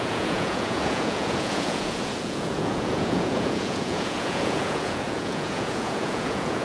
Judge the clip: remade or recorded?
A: remade